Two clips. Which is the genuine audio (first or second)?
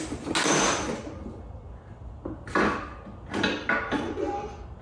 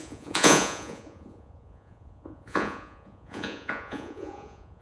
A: first